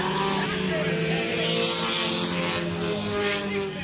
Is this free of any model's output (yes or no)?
yes